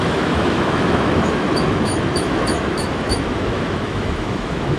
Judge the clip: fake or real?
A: fake